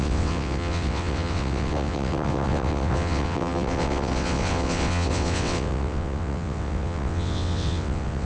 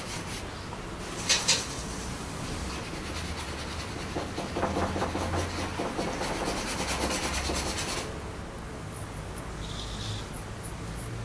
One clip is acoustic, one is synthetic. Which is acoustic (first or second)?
second